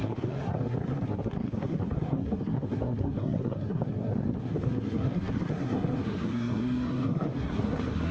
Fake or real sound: fake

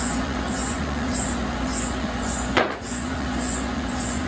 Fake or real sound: fake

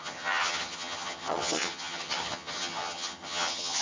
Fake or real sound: fake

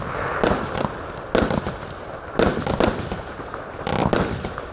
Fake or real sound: real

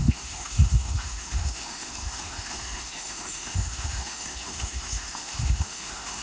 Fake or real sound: fake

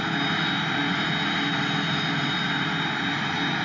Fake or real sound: real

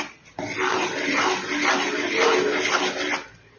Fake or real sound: real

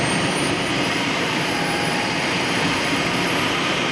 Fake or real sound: fake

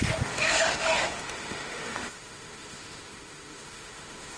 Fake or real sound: fake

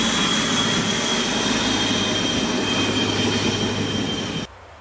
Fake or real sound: real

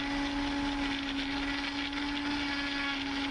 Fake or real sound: real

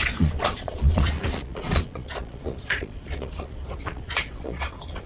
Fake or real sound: fake